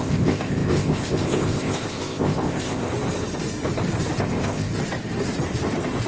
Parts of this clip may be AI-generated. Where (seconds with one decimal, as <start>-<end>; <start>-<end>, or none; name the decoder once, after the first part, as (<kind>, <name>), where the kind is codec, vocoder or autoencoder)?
0.0-2.9 (codec, ZipCodec); 4.2-4.7